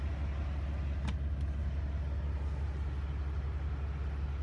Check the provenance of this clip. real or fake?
real